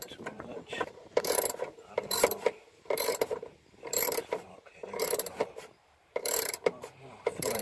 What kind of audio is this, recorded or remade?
remade